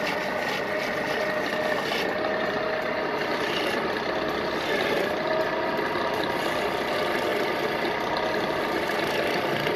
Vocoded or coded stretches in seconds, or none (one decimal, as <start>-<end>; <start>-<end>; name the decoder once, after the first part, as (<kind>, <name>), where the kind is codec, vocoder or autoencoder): none